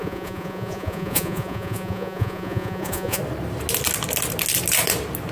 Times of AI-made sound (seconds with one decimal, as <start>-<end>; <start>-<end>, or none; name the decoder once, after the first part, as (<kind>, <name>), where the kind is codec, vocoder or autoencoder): 0.0-3.2 (vocoder, Vocos)